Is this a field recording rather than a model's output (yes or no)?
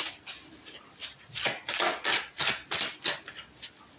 yes